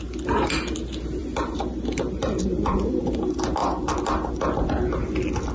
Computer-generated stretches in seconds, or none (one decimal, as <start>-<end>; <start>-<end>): none